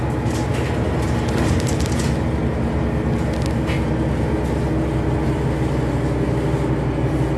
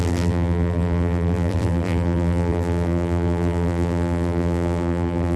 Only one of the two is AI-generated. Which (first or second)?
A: second